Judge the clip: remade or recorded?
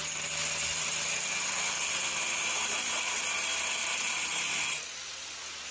recorded